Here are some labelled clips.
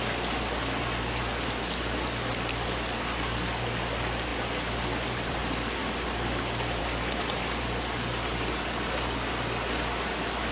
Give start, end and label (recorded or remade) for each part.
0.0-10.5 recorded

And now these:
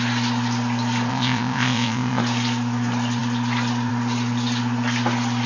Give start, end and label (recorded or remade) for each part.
0.0-1.1 recorded; 1.1-2.2 remade; 2.2-5.5 recorded

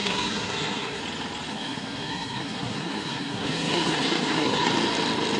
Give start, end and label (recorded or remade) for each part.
0.0-1.0 remade; 1.0-1.5 recorded; 1.5-4.7 remade; 4.7-5.4 recorded

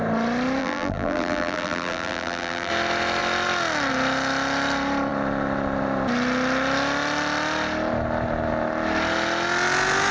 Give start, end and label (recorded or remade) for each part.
0.0-0.6 recorded; 0.6-2.7 remade; 2.7-10.1 recorded